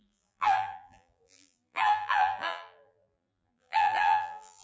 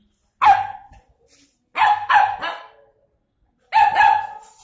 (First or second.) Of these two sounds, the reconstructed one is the first